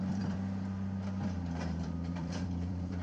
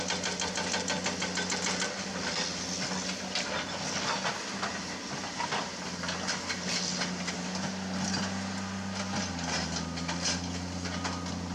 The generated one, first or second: first